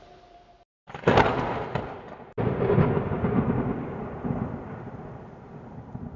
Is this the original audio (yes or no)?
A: yes